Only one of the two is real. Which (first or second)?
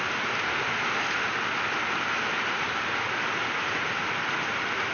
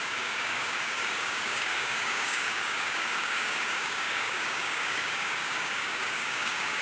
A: first